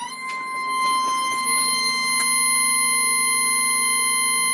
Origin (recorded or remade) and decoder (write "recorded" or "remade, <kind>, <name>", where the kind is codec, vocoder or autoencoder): recorded